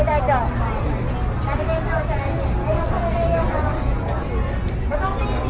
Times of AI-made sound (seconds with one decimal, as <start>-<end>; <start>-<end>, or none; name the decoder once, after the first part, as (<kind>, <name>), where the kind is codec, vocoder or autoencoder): none